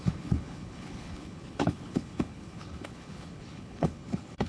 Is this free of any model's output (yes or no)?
no